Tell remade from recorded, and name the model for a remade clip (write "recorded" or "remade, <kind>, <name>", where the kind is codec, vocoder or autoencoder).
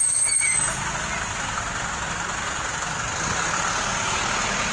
recorded